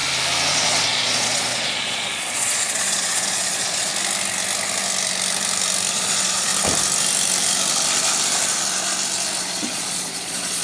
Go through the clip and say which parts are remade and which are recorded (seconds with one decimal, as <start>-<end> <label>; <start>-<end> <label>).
0.0-0.5 recorded; 0.5-3.9 remade; 3.9-5.9 recorded; 5.9-6.5 remade; 6.5-9.4 recorded; 9.4-10.6 remade